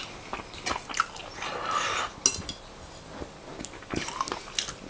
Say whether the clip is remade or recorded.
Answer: recorded